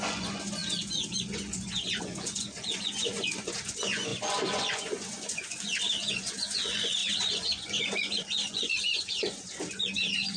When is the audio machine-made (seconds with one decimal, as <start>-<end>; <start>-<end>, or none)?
0.0-10.4